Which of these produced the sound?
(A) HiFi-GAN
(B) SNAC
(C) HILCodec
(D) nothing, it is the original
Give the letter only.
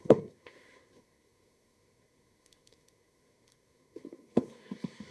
B